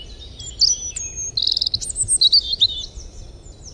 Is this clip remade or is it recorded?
recorded